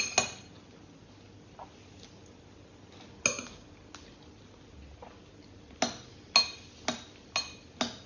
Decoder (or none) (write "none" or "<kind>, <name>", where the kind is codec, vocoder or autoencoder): none